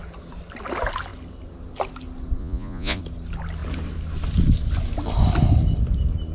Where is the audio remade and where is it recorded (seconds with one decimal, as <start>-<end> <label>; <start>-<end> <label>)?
0.0-2.4 recorded; 2.4-3.0 remade; 3.0-6.3 recorded